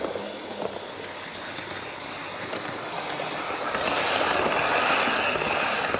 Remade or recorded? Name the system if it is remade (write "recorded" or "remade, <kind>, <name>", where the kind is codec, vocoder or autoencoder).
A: recorded